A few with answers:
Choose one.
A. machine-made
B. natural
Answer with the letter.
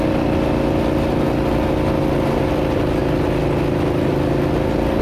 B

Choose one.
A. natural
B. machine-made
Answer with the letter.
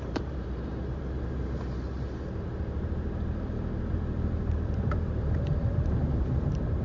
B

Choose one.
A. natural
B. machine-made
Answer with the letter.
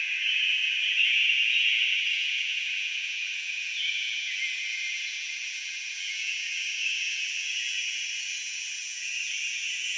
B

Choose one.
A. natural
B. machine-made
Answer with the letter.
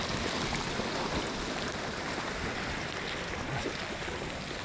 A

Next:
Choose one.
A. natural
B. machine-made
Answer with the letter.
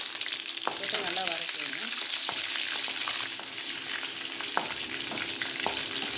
B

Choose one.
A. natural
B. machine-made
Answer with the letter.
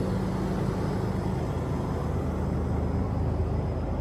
A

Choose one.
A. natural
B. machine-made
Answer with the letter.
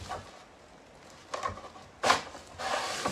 A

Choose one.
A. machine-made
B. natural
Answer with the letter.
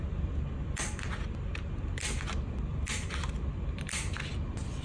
B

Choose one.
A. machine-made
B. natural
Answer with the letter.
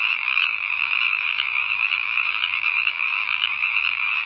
A